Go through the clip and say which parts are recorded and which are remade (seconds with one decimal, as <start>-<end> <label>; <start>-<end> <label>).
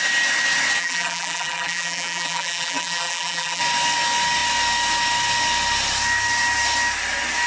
0.0-0.8 recorded; 0.8-3.6 remade; 3.6-7.5 recorded